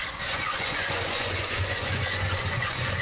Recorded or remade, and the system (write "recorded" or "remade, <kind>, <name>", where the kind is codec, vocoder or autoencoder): remade, vocoder, Vocos